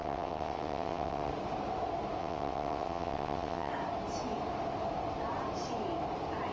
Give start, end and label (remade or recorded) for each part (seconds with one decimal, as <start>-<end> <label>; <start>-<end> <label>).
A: 0.0-1.3 remade; 1.3-2.2 recorded; 2.2-3.7 remade; 3.7-6.5 recorded